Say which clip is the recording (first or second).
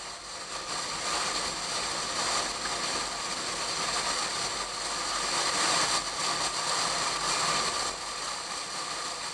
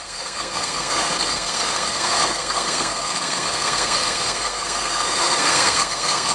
first